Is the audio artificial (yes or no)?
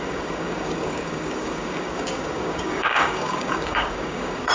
yes